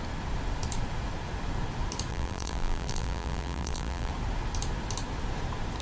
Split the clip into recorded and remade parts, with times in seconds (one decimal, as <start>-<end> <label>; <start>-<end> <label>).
0.0-2.1 recorded; 2.1-4.1 remade; 4.1-5.8 recorded